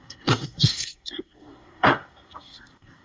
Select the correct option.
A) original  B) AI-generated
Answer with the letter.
B